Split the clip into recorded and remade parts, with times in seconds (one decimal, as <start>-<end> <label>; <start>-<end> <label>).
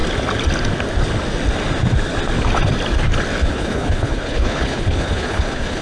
0.0-3.5 recorded; 3.5-5.8 remade